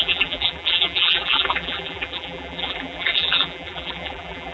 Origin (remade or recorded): remade